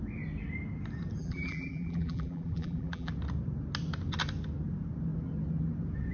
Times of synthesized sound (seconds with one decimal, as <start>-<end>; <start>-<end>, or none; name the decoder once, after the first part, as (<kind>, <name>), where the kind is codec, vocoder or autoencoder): 1.2-3.1 (vocoder, BigVGAN v2)